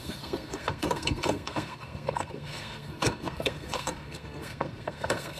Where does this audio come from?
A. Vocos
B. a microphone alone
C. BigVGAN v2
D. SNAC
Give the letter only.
D